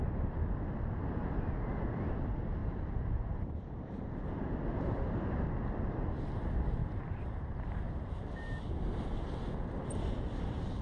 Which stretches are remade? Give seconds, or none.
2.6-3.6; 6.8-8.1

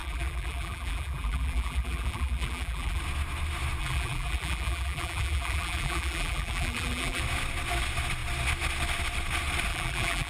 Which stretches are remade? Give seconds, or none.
0.0-3.0; 3.8-7.2; 9.7-10.3

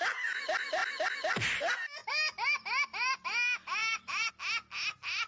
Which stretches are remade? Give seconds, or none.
3.8-4.3

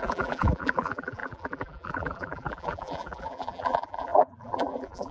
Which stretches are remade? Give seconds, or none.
0.0-5.1

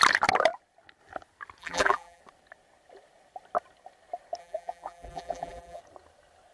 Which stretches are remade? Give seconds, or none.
1.6-2.2; 4.4-5.8